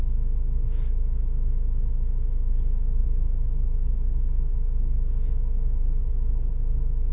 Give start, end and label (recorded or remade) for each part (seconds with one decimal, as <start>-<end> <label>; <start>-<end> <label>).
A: 0.0-7.1 remade